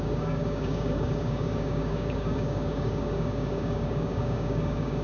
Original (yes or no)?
no